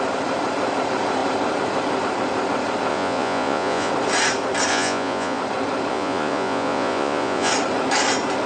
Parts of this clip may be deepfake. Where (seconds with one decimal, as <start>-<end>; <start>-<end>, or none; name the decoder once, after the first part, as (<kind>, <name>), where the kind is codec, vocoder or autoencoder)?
2.9-3.9 (vocoder, Vocos); 4.7-5.4; 5.9-7.5